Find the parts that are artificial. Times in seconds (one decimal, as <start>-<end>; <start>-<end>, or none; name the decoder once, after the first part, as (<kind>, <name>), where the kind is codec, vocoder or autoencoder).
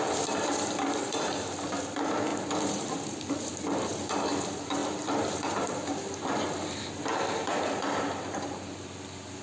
0.0-9.4 (vocoder, BigVGAN v2)